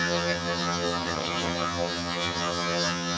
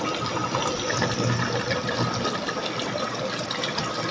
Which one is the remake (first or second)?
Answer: first